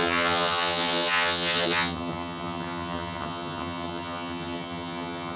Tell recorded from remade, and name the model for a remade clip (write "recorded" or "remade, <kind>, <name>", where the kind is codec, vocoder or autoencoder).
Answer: remade, vocoder, HiFi-GAN